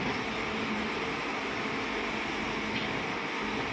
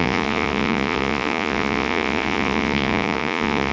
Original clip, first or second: first